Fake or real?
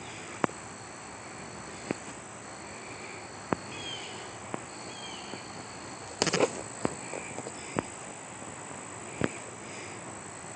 real